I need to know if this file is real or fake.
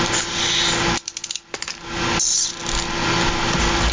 real